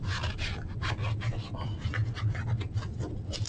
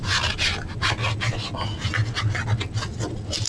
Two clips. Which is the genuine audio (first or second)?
second